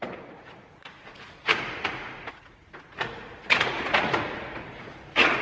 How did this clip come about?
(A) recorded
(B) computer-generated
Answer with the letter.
B